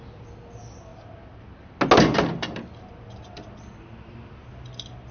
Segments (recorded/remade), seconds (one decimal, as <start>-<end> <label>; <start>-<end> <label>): 0.0-0.9 remade; 0.9-2.2 recorded; 2.2-5.1 remade